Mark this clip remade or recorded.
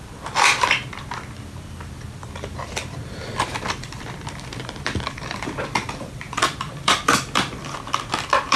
remade